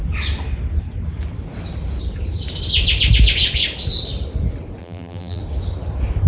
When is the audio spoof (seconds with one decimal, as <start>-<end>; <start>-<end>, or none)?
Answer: 4.8-5.4